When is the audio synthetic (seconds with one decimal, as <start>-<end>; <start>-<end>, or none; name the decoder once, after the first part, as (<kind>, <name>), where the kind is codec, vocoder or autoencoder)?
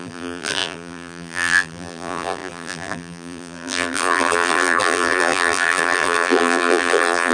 0.0-7.3 (vocoder, BigVGAN v2)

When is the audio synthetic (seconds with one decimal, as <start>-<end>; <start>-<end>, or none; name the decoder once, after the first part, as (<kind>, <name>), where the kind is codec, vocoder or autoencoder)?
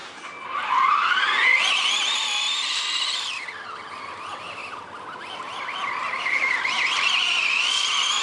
1.5-3.4 (vocoder, BigVGAN v2); 4.6-8.2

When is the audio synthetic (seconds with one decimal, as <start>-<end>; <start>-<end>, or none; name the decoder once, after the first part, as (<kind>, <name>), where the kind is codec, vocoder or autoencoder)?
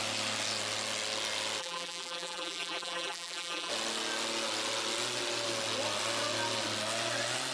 1.6-3.7 (vocoder, BigVGAN v2)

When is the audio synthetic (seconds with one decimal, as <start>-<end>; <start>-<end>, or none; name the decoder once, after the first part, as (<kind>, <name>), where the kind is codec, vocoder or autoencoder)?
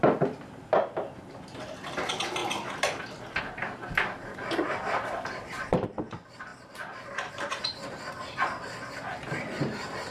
0.0-2.4 (vocoder, BigVGAN v2); 3.4-6.5; 7.3-10.1